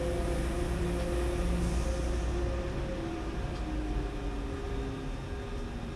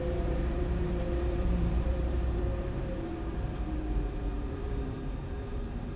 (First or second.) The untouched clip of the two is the first